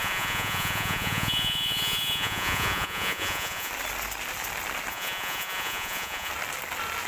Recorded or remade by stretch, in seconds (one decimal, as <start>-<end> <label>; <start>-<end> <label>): 0.0-3.7 remade; 3.7-4.9 recorded; 4.9-6.3 remade; 6.3-7.1 recorded